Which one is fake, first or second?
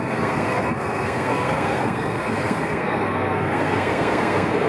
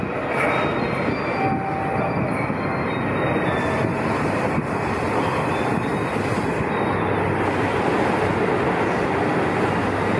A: first